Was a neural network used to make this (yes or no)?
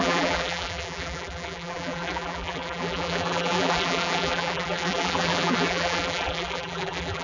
yes